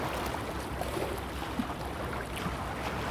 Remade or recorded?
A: recorded